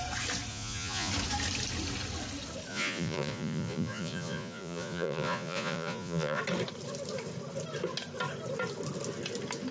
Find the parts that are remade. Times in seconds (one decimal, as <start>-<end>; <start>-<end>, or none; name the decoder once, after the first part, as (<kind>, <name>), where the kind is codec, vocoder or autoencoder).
0.5-1.1 (vocoder, Vocos); 2.7-6.4